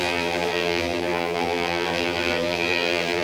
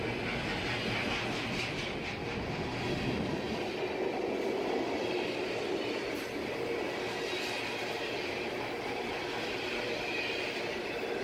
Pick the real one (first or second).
second